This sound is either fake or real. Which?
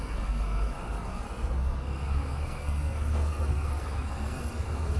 fake